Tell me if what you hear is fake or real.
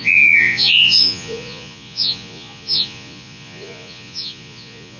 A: fake